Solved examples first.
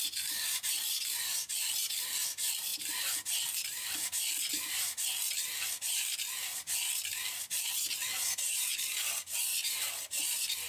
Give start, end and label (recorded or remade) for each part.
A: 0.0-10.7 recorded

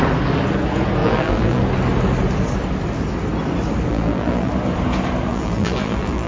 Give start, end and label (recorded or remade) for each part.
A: 0.0-1.0 recorded; 1.0-1.6 remade; 1.6-3.9 recorded; 3.9-4.5 remade; 4.5-5.3 recorded; 5.3-6.3 remade

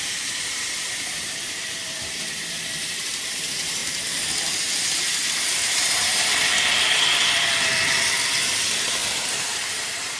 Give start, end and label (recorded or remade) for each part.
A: 0.0-3.8 remade; 3.8-4.6 recorded; 4.6-6.5 remade; 6.5-8.4 recorded; 8.4-10.2 remade

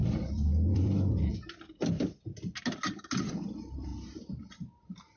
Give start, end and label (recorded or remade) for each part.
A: 0.0-1.3 remade; 1.3-3.3 recorded; 3.3-3.9 remade; 3.9-5.2 recorded

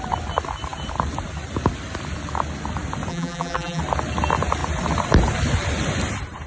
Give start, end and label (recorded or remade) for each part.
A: 0.0-3.1 recorded; 3.1-3.8 remade; 3.8-6.5 recorded

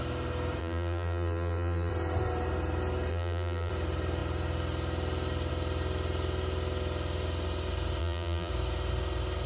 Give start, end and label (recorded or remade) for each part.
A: 0.0-0.6 recorded; 0.6-1.9 remade; 1.9-3.1 recorded; 3.1-3.7 remade; 3.7-8.0 recorded; 8.0-8.5 remade; 8.5-9.5 recorded